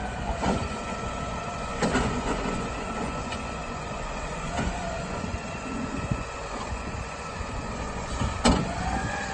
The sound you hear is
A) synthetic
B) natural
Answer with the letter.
A